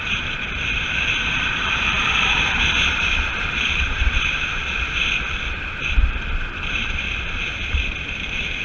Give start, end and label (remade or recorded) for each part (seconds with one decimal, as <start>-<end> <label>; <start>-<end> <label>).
0.0-4.6 remade; 4.6-6.1 recorded; 6.1-8.6 remade